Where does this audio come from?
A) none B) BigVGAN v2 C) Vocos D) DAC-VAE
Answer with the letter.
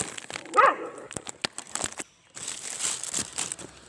A